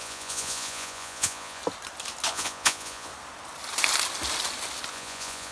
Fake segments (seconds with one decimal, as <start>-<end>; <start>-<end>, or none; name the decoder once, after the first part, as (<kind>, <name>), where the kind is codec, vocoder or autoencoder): 0.0-1.6 (vocoder, Vocos); 2.3-3.1; 4.9-5.5